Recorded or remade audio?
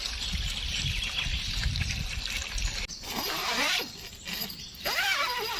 recorded